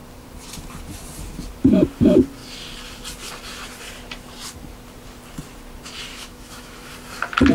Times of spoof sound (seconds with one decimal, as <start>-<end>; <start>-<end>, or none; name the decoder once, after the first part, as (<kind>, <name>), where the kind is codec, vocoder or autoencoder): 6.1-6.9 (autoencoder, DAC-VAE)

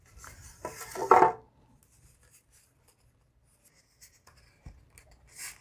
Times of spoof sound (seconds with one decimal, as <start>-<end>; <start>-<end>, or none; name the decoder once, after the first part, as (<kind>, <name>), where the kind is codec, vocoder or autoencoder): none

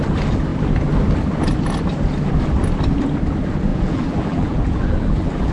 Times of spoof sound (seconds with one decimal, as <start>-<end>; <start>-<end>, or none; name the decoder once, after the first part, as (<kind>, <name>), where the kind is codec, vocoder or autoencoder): 3.7-5.5 (vocoder, BigVGAN v2)

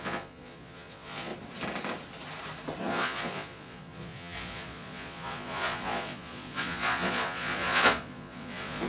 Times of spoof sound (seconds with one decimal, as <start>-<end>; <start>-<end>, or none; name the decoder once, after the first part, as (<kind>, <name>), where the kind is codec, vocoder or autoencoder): 0.0-1.3 (vocoder, Vocos); 2.8-8.9

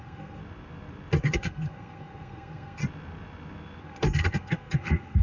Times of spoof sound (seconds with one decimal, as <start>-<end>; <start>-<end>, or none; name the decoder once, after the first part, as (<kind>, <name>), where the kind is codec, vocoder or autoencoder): 0.0-0.4 (codec, SNAC); 1.2-2.8; 3.8-5.2